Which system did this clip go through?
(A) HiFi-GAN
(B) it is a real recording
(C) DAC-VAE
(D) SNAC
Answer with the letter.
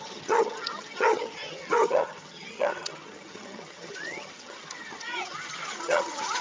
A